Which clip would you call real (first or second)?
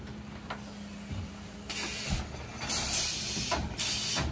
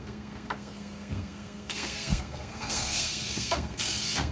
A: first